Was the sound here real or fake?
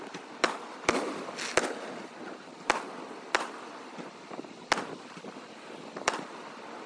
real